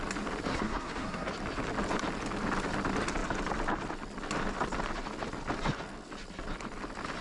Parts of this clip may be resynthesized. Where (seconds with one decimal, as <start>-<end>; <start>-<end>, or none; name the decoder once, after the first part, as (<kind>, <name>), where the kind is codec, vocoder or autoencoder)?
0.5-1.3 (codec, SNAC)